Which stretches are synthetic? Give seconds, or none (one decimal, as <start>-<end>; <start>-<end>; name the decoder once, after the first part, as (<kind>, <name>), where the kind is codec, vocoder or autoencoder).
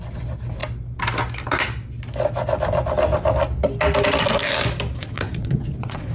5.0-6.1 (vocoder, Vocos)